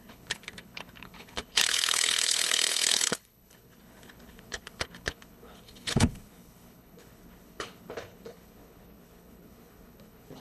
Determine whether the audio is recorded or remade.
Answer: remade